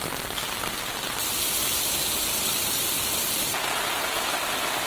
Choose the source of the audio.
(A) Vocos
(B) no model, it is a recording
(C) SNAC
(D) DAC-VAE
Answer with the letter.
B